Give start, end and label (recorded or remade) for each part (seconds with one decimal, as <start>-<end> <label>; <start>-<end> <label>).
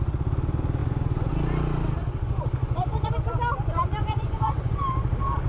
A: 0.0-0.8 recorded; 0.8-1.3 remade; 1.3-2.6 recorded; 2.6-3.1 remade; 3.1-4.0 recorded; 4.0-4.8 remade; 4.8-5.5 recorded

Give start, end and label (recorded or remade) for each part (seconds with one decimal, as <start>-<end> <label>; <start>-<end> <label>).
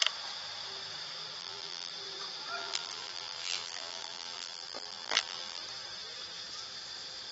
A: 0.0-1.4 recorded; 1.4-1.9 remade; 1.9-2.6 recorded; 2.6-5.6 remade; 5.6-7.3 recorded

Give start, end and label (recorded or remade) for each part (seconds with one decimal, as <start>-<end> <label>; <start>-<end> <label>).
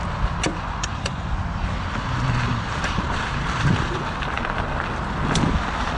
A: 0.0-0.5 recorded; 0.5-1.4 remade; 1.4-6.0 recorded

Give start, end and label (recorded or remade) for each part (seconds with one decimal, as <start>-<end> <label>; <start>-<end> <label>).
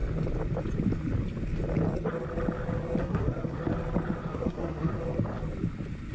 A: 0.0-3.0 recorded; 3.0-3.6 remade; 3.6-4.3 recorded; 4.3-4.9 remade; 4.9-6.1 recorded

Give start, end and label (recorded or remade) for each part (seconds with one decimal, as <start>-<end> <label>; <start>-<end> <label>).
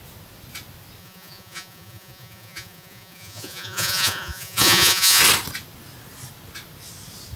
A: 0.0-1.0 recorded; 1.0-5.2 remade; 5.2-7.4 recorded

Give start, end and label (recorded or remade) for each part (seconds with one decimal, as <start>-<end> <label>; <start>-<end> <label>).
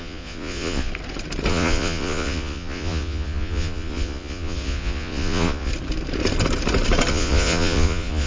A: 0.0-0.9 remade; 0.9-1.5 recorded; 1.5-5.7 remade; 5.7-7.1 recorded; 7.1-8.3 remade